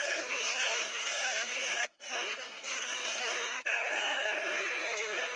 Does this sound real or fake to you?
fake